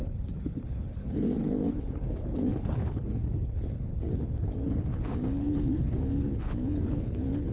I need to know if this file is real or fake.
fake